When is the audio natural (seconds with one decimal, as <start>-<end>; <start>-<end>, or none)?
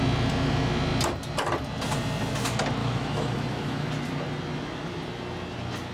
0.0-2.8; 3.9-5.9